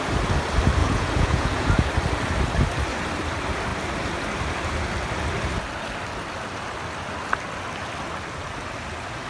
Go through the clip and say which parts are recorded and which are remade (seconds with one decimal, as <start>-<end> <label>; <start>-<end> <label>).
0.0-0.8 recorded; 0.8-1.9 remade; 1.9-9.3 recorded